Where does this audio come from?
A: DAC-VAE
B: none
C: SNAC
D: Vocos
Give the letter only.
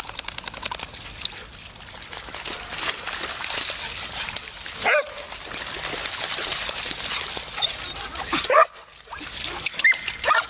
B